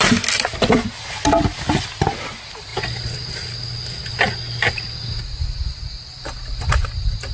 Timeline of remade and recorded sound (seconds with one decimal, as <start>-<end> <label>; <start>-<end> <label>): 0.0-7.3 recorded